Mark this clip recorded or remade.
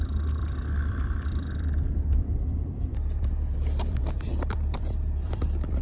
remade